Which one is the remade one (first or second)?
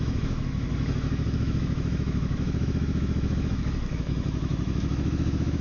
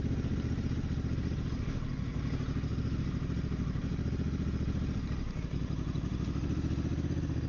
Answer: first